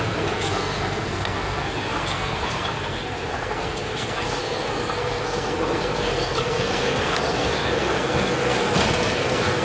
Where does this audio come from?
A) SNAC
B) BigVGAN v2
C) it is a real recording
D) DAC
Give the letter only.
A